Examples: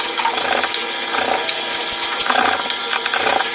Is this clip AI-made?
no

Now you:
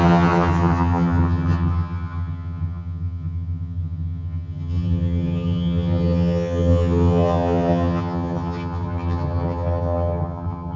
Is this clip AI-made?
yes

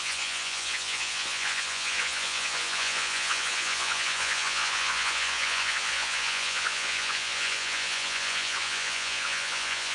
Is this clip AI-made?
yes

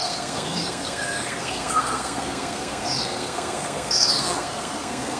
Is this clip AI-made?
yes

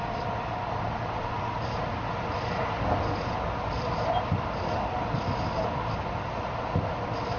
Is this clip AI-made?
no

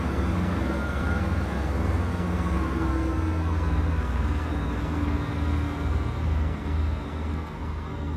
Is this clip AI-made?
yes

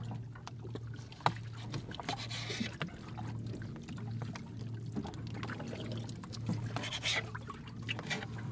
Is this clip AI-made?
no